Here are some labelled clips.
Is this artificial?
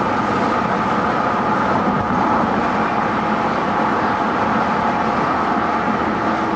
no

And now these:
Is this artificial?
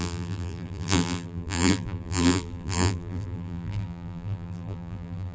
yes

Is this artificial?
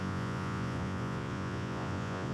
yes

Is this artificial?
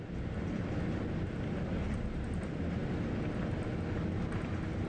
no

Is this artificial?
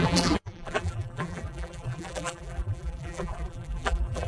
yes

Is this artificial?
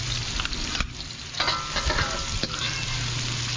no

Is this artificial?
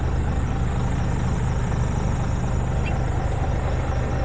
no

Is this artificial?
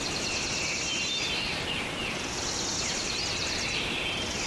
no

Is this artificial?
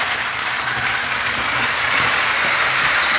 yes